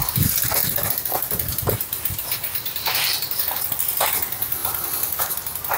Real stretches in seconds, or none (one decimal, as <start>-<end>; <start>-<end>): 0.0-0.6; 4.1-5.8